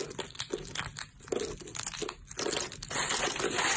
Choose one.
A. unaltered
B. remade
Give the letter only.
A